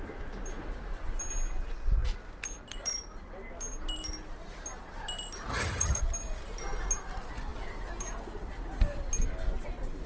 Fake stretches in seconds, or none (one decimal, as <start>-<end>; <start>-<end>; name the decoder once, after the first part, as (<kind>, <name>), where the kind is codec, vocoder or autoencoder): 5.5-6.0 (vocoder, HiFi-GAN)